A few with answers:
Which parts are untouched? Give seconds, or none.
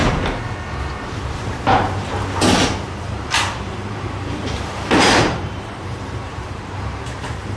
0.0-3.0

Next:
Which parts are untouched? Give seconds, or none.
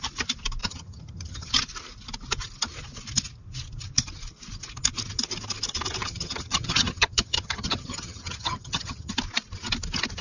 0.0-0.6; 1.5-6.0; 9.1-10.2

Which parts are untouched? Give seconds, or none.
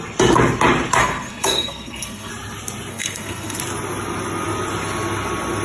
0.0-1.0; 2.3-2.9; 3.6-5.6